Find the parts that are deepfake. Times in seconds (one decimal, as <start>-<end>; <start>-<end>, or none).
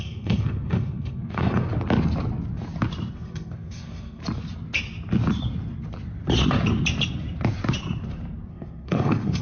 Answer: 0.0-1.7; 3.1-4.2; 8.5-9.4